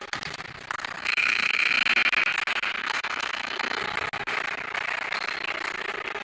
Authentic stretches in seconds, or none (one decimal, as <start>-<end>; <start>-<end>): 0.0-1.0; 1.7-2.8; 3.8-6.2